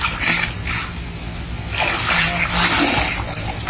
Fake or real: real